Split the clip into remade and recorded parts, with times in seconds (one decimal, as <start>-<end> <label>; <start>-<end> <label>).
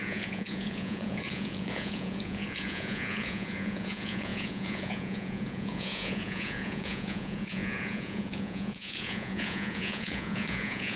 0.0-11.0 remade